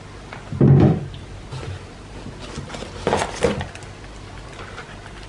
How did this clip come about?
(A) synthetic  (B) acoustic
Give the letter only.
B